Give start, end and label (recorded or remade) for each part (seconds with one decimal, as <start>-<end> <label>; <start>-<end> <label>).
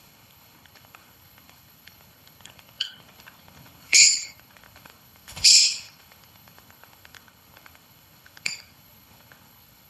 0.0-9.9 remade